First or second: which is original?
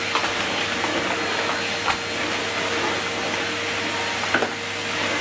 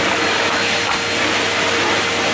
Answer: first